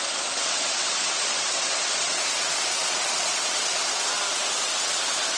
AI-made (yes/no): yes